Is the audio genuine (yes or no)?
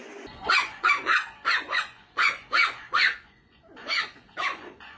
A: no